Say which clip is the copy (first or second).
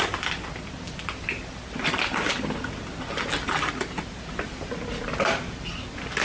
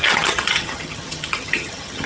second